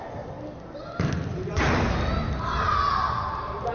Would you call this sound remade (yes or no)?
no